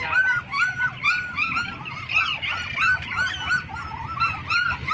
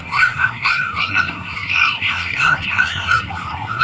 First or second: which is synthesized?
second